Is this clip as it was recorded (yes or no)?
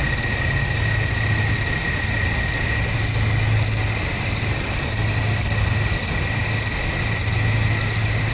yes